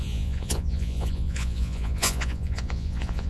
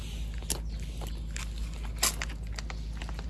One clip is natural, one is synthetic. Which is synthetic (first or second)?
first